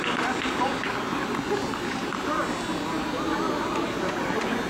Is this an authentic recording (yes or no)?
yes